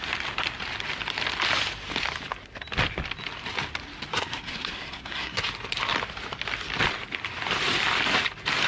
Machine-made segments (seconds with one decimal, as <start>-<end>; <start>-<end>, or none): 4.1-5.4